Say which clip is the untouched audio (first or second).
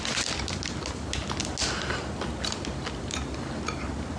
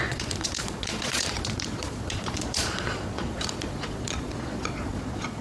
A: first